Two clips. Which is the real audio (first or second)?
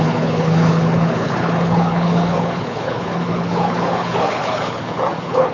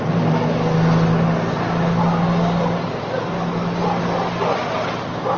second